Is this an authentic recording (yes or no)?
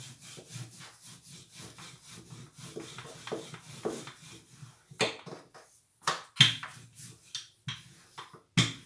yes